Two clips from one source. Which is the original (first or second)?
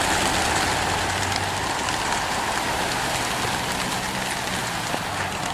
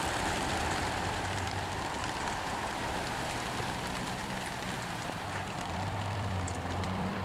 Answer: first